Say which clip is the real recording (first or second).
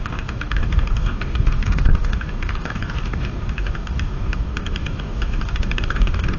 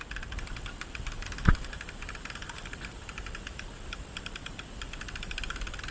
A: second